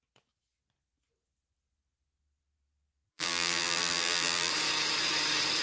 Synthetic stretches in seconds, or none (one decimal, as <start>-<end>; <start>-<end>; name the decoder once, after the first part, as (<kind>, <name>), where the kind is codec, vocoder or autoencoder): 2.2-4.5 (vocoder, BigVGAN v2)